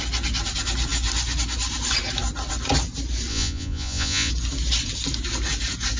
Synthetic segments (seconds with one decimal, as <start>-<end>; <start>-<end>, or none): 3.3-4.3